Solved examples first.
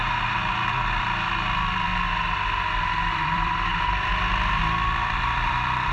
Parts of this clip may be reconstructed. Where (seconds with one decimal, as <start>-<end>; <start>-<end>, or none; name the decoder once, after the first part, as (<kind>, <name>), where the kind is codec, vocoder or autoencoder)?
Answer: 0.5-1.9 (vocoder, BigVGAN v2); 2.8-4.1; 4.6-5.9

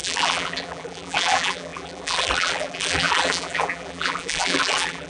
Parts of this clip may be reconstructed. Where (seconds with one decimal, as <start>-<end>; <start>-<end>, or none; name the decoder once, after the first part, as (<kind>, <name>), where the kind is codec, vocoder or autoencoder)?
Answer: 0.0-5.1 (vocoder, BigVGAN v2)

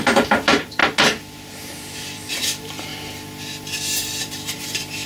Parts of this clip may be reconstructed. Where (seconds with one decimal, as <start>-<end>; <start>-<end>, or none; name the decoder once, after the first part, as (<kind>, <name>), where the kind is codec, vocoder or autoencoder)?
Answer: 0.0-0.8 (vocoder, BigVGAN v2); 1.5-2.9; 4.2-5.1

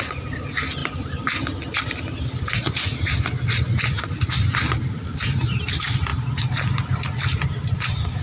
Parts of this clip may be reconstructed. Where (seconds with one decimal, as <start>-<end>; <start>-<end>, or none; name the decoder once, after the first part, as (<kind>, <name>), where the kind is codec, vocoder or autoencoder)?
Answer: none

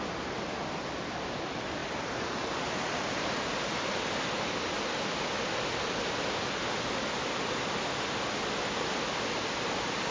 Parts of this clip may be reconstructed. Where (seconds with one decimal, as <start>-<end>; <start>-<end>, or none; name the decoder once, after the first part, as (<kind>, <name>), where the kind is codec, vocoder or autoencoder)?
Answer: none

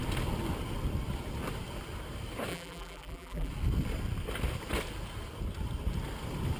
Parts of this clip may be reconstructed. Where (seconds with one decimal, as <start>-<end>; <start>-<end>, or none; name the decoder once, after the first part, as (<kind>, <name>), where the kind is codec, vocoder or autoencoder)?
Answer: 2.5-3.5 (vocoder, BigVGAN v2)